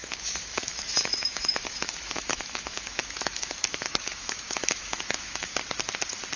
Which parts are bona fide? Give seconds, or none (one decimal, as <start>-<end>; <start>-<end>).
5.5-6.4